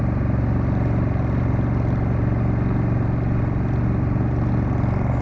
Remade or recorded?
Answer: recorded